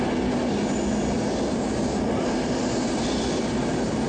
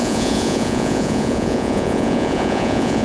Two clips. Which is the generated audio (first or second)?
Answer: second